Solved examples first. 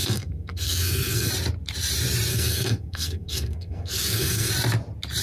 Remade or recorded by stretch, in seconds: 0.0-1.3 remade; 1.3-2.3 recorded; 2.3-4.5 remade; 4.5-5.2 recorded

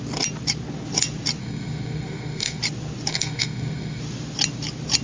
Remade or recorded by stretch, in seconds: 0.0-1.4 recorded; 1.4-2.6 remade; 2.6-3.1 recorded; 3.1-4.0 remade; 4.0-5.0 recorded